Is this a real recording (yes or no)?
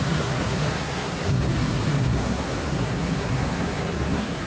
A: no